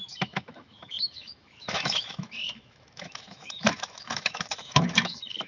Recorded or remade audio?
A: remade